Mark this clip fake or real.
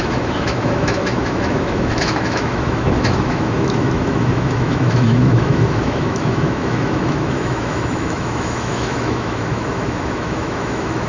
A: fake